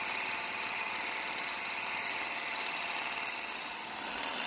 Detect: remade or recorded recorded